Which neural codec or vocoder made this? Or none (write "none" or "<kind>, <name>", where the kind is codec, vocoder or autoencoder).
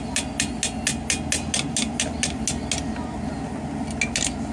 none